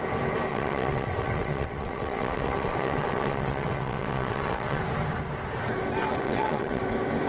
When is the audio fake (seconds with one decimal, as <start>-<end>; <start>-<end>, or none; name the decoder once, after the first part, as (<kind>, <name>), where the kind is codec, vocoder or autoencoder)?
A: 0.5-4.8 (vocoder, WaveNeXt); 6.1-6.8